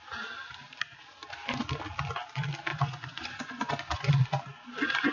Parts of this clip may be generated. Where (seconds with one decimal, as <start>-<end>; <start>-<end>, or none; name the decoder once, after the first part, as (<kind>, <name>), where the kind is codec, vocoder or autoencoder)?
2.7-4.1 (vocoder, Vocos)